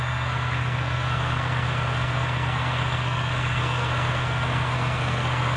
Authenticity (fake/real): fake